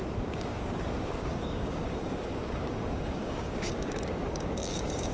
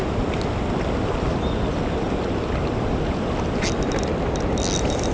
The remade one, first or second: first